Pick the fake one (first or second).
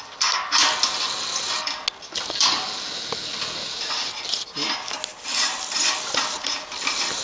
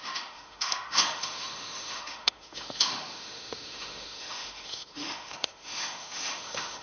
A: second